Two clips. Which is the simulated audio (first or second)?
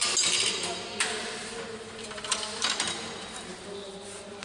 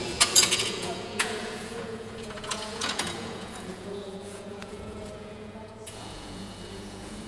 second